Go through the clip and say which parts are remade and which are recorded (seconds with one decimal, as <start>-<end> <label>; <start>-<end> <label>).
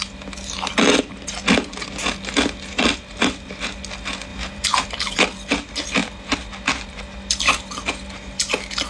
0.0-4.3 recorded; 4.3-5.2 remade; 5.2-8.9 recorded